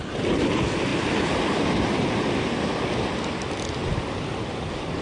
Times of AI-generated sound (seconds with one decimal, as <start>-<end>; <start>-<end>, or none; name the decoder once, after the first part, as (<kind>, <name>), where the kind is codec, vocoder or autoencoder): 0.9-3.1 (vocoder, BigVGAN v2); 3.8-4.4